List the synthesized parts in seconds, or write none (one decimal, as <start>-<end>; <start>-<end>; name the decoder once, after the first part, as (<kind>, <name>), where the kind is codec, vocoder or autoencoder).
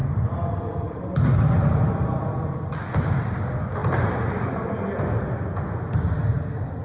none